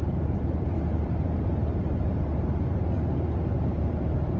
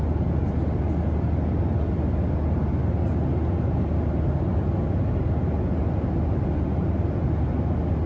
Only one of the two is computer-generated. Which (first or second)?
first